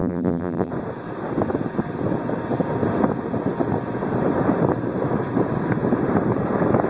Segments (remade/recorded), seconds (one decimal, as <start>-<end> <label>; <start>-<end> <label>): 0.0-0.7 remade; 0.7-6.9 recorded